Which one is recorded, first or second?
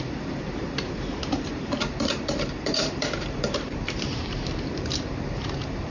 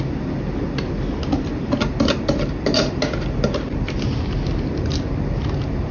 second